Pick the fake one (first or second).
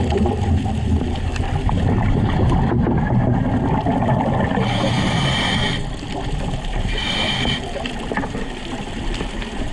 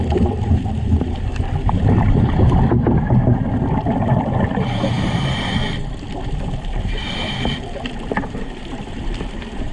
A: second